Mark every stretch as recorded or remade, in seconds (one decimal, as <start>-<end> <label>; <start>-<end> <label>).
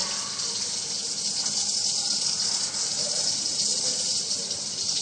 0.0-3.0 recorded; 3.0-5.0 remade